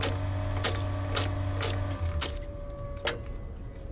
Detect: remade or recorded recorded